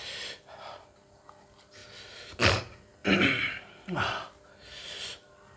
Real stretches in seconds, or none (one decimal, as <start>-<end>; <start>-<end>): 0.0-3.0; 3.7-5.6